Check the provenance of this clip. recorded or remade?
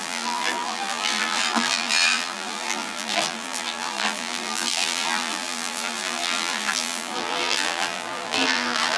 remade